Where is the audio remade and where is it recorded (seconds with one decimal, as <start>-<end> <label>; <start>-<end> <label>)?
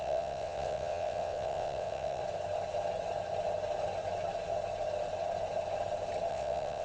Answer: 0.0-2.2 remade; 2.2-6.3 recorded; 6.3-6.8 remade